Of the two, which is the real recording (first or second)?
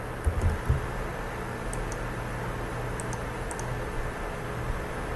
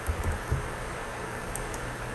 first